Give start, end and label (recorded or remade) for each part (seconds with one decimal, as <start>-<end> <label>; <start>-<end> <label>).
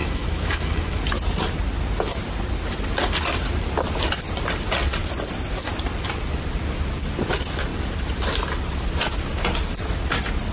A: 0.0-1.0 remade; 1.0-10.5 recorded